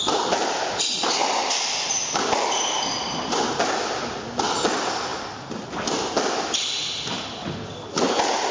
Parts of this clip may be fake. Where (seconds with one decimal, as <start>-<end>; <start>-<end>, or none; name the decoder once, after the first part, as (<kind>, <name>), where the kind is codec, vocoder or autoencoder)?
none